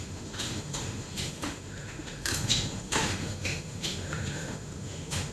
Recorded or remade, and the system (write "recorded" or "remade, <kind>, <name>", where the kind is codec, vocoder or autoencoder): remade, autoencoder, DAC-VAE